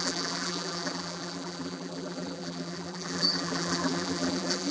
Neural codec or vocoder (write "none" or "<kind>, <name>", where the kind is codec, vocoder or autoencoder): vocoder, BigVGAN v2